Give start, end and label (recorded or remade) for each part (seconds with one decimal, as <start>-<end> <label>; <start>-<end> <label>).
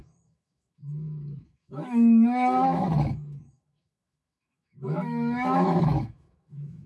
0.0-6.9 remade